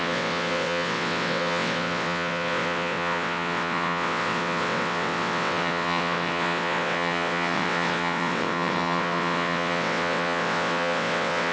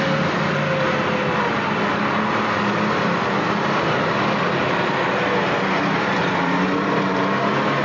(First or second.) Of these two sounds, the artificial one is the first